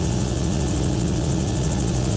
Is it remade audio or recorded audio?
remade